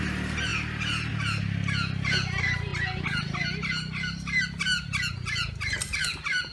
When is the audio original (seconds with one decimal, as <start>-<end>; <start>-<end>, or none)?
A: 0.0-6.5